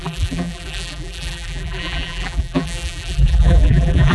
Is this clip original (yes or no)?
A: no